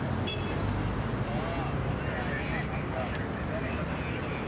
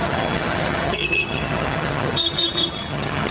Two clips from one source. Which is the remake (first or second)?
second